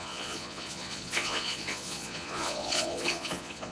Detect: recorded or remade remade